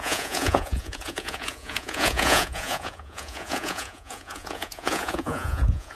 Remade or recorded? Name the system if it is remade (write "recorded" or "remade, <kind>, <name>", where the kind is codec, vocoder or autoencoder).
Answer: remade, vocoder, Vocos